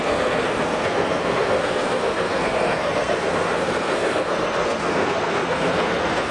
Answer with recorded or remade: remade